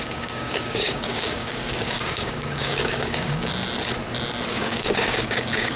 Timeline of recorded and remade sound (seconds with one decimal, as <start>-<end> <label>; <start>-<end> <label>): 0.0-3.5 remade; 3.5-4.5 recorded; 4.5-5.8 remade